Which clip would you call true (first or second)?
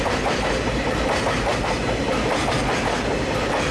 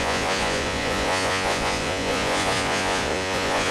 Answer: first